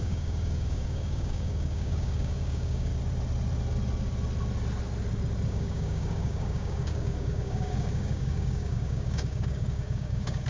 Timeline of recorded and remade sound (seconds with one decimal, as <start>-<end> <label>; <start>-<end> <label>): 0.0-2.9 remade; 2.9-5.5 recorded; 5.5-10.5 remade